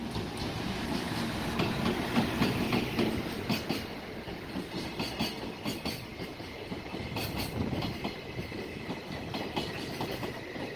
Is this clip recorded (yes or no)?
yes